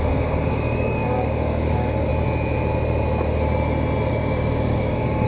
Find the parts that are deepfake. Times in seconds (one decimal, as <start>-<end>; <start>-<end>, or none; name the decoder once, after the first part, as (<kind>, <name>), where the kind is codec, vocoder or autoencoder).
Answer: 0.0-2.1 (codec, DAC); 4.1-5.3